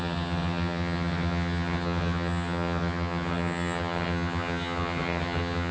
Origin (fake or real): fake